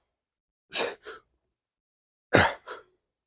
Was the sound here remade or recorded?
recorded